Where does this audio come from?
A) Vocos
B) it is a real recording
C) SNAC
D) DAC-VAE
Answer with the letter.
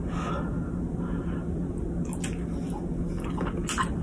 B